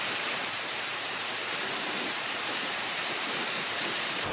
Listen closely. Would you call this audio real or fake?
fake